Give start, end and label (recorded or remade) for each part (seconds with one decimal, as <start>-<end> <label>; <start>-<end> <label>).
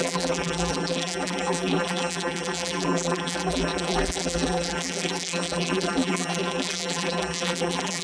0.0-8.0 remade